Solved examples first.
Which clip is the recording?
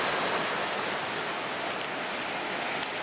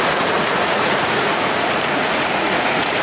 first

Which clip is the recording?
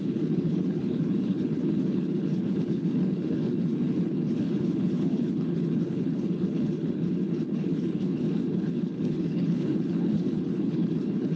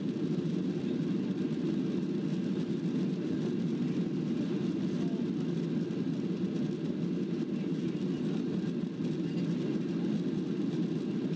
second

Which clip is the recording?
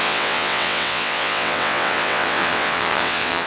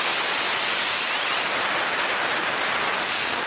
second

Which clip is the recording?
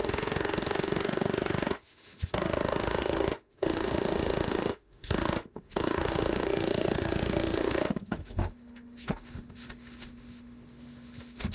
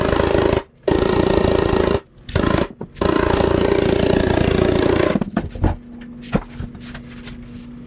second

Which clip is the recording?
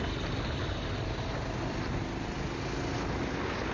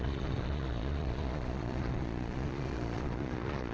first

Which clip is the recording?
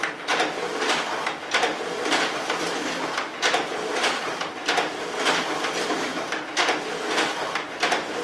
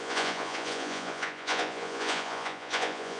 first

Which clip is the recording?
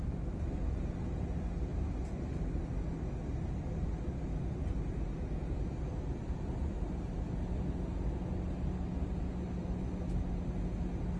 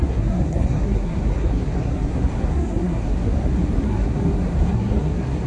first